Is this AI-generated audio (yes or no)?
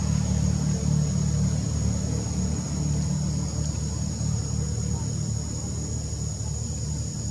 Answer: no